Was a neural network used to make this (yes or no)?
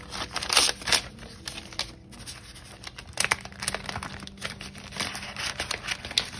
no